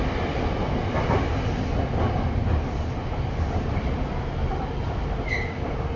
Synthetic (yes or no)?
no